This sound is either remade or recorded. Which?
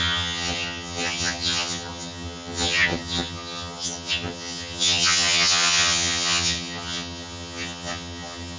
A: remade